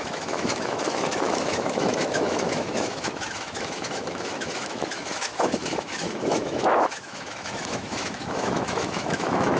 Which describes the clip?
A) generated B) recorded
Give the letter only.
A